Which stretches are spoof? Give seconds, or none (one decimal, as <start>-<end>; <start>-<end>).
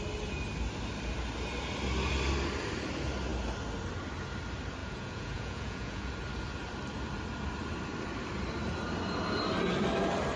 4.8-6.1